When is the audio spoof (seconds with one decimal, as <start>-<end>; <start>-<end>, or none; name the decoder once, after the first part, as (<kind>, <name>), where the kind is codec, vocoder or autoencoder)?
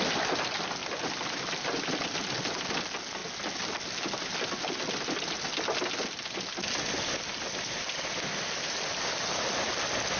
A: none